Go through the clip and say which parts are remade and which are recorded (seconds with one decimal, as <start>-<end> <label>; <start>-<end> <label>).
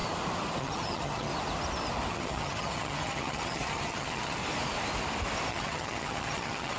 0.0-0.6 recorded; 0.6-1.3 remade; 1.3-2.1 recorded; 2.1-4.4 remade; 4.4-5.5 recorded; 5.5-6.8 remade